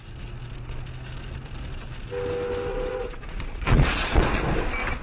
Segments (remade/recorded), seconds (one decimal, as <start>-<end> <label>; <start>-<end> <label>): 0.0-2.7 recorded; 2.7-4.4 remade; 4.4-5.0 recorded

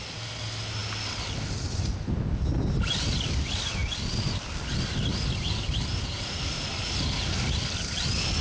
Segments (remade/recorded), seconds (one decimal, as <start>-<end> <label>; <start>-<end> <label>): 0.0-8.4 recorded

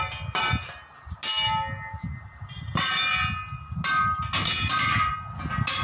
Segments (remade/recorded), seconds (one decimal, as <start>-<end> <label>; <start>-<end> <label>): 0.0-5.8 recorded

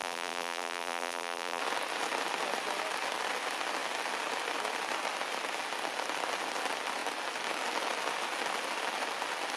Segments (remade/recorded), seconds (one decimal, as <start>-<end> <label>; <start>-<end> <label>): 0.0-1.6 remade; 1.6-9.6 recorded